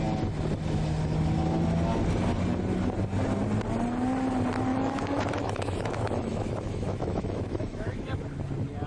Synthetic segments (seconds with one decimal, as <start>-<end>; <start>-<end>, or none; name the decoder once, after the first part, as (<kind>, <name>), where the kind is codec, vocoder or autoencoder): 4.7-8.2 (autoencoder, DAC-VAE)